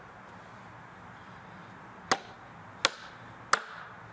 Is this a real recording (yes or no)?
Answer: yes